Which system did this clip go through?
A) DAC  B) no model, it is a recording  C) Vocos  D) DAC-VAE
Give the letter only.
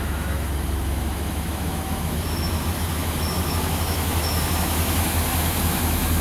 D